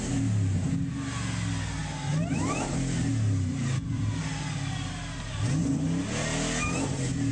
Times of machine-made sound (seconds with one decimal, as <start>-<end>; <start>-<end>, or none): none